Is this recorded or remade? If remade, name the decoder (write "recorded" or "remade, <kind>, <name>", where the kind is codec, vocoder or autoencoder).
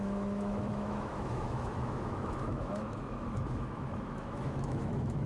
remade, autoencoder, DAC-VAE